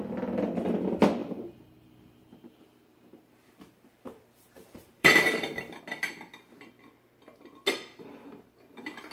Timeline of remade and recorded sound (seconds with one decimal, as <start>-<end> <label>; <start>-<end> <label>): 0.0-1.2 recorded; 1.2-5.8 remade; 5.8-9.1 recorded